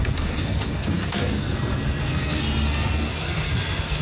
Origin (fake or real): fake